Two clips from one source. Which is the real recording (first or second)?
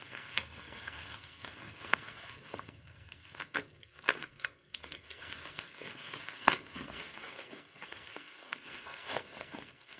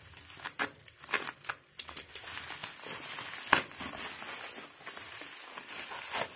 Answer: second